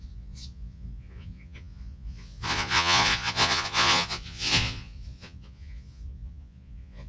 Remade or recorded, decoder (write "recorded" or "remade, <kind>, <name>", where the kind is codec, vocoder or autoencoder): remade, vocoder, Vocos